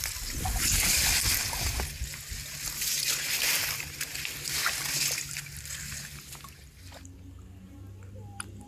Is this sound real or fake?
real